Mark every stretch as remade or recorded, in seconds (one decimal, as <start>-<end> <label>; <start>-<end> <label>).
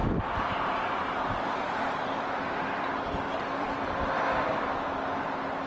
0.0-4.7 remade; 4.7-5.7 recorded